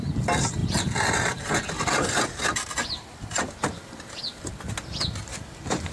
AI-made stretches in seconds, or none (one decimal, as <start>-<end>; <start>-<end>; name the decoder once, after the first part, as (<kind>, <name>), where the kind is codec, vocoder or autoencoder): 0.0-4.5 (vocoder, BigVGAN v2); 5.2-5.9